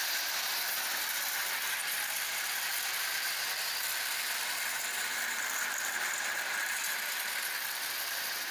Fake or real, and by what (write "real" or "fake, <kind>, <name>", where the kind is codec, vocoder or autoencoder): fake, vocoder, BigVGAN v2